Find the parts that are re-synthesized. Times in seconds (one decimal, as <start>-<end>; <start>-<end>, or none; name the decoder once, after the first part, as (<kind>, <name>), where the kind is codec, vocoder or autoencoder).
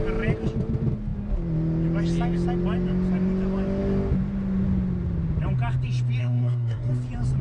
6.2-6.9 (codec, SNAC)